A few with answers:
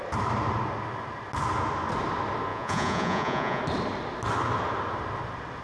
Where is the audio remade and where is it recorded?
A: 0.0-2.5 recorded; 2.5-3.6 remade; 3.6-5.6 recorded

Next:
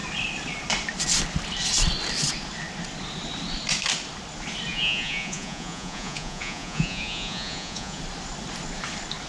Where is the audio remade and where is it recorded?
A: 0.0-4.7 recorded; 4.7-8.0 remade; 8.0-9.3 recorded